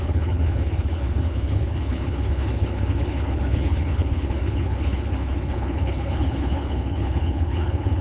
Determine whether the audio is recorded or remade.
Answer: remade